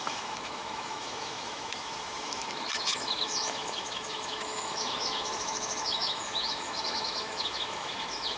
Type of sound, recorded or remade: remade